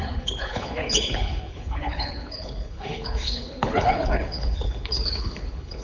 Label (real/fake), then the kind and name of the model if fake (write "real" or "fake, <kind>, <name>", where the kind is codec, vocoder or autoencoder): fake, codec, HILCodec